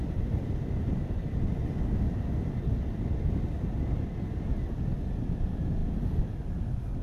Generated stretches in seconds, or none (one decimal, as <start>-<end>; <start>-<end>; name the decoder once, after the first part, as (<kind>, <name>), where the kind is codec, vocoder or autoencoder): none

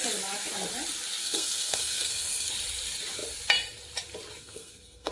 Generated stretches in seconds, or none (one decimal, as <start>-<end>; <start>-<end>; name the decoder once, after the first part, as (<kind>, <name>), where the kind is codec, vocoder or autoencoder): 1.2-2.5 (codec, SNAC); 4.4-5.1

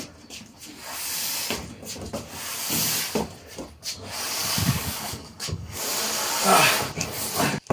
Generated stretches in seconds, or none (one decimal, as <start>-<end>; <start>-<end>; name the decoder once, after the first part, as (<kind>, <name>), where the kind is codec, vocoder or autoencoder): 4.4-5.8 (codec, DAC)

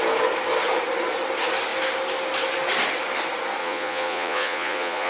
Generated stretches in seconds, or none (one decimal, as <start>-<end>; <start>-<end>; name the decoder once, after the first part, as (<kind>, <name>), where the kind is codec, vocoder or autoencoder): 3.6-5.1 (vocoder, Vocos)

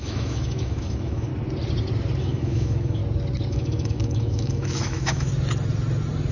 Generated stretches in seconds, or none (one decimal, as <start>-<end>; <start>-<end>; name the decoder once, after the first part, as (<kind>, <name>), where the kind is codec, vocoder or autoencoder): 0.0-1.3 (autoencoder, DAC-VAE); 2.2-3.0; 3.5-5.3